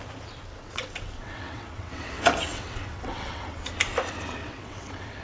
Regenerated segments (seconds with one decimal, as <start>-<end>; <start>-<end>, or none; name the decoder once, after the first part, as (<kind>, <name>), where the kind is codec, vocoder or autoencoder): 0.5-3.6 (vocoder, WaveNeXt); 4.4-5.2